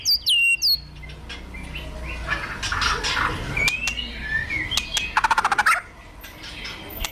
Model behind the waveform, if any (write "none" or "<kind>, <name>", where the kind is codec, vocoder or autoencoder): none